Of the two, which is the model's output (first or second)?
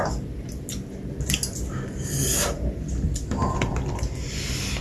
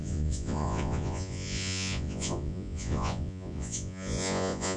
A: second